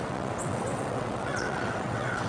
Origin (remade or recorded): remade